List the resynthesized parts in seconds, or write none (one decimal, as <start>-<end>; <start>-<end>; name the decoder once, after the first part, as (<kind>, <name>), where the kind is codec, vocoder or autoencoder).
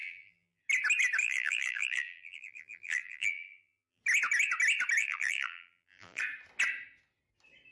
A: 0.0-0.6 (vocoder, BigVGAN v2); 1.2-4.0; 5.0-6.2